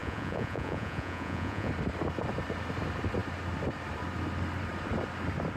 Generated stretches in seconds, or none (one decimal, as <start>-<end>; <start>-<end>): 0.0-1.7